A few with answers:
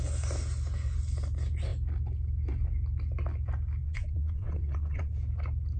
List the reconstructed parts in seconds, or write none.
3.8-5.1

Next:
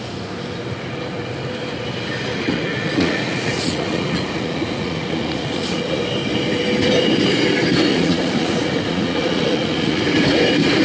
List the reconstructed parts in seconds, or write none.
2.3-6.0; 7.9-10.0

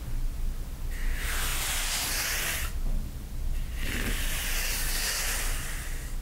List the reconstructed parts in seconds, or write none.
none

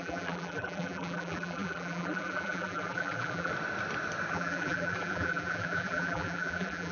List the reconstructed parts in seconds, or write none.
0.0-3.5; 4.3-6.9

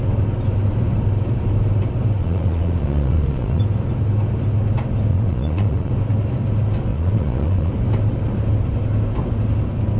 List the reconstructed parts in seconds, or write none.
2.2-3.6; 5.1-5.9; 6.9-7.7